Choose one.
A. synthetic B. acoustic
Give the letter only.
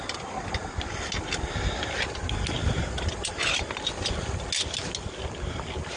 B